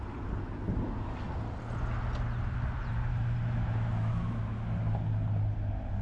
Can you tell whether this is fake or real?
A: real